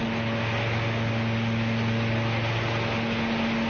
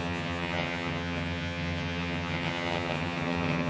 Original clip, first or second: first